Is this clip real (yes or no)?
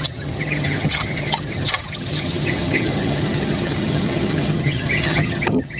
no